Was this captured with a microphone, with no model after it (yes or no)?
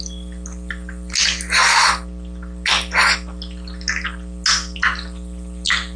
yes